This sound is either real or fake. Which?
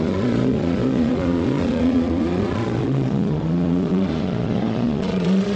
fake